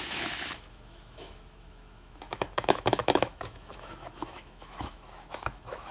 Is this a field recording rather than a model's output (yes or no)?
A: no